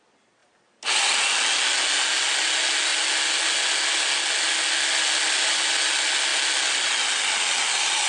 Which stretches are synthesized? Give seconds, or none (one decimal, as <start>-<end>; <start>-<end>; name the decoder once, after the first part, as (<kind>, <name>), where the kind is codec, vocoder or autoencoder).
none